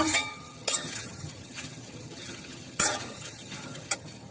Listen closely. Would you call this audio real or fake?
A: fake